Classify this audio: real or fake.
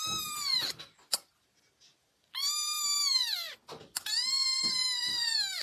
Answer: real